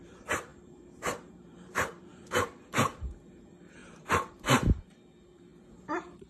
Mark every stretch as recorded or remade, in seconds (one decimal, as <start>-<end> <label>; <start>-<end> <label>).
0.0-6.3 remade